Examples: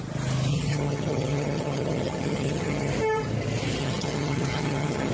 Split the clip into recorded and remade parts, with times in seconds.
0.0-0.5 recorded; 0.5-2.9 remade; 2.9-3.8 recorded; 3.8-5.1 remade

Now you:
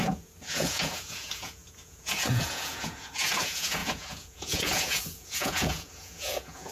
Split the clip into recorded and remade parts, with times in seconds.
0.0-6.7 remade

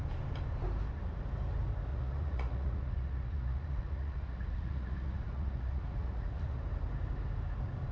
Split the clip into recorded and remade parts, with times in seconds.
0.0-1.9 recorded; 1.9-6.6 remade; 6.6-7.9 recorded

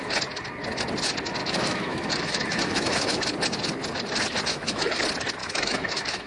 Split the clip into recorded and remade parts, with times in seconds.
0.0-1.4 recorded; 1.4-3.2 remade; 3.2-4.5 recorded; 4.5-5.0 remade; 5.0-5.4 recorded; 5.4-6.3 remade

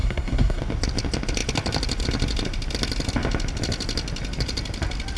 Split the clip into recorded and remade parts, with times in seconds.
0.0-0.6 remade; 0.6-5.2 recorded